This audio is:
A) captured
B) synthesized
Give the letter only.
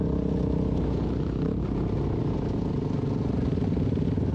A